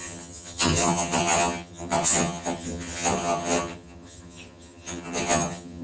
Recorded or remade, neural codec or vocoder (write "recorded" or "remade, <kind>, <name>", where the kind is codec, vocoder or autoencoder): remade, vocoder, HiFi-GAN